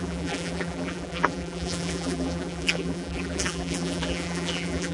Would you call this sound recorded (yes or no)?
no